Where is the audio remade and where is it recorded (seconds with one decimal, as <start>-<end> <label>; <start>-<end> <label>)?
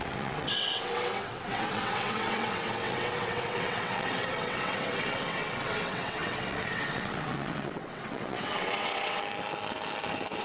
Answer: 0.0-9.2 remade; 9.2-10.4 recorded